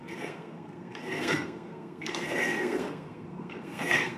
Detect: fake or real fake